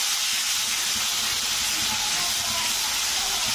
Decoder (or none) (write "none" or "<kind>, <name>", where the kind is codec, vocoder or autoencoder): none